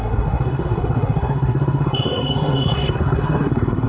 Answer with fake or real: fake